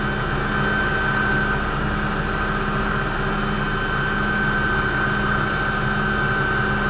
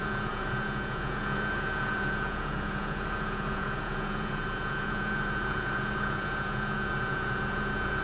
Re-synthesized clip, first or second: second